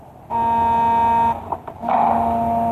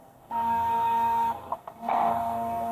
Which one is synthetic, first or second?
second